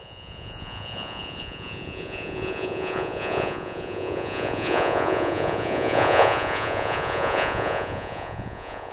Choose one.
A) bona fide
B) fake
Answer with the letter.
B